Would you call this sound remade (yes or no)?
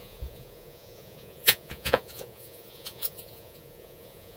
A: yes